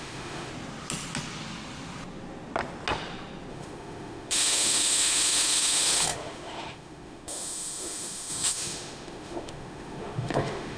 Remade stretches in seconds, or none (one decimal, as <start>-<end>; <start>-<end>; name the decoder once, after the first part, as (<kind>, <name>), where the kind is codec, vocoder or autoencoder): 0.0-0.5 (autoencoder, DAC-VAE); 3.5-10.8